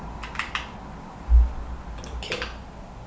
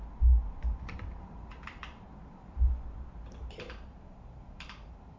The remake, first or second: second